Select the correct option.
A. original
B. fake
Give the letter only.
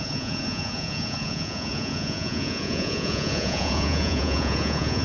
B